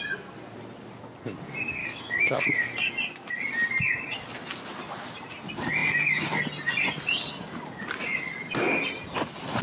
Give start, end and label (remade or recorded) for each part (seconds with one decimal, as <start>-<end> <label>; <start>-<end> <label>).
0.0-1.8 recorded; 1.8-2.4 remade; 2.4-9.6 recorded